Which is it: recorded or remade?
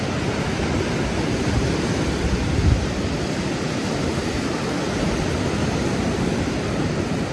recorded